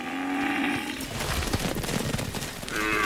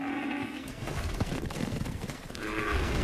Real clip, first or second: first